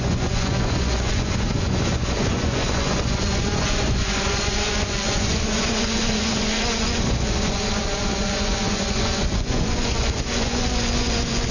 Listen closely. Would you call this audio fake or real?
fake